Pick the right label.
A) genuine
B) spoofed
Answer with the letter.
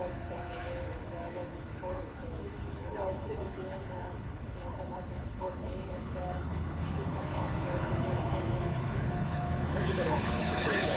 B